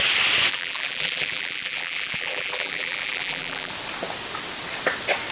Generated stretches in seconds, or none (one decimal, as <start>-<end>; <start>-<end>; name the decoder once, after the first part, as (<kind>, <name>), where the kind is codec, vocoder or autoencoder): 0.5-3.7 (vocoder, BigVGAN v2)